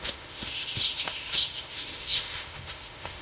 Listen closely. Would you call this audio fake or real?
fake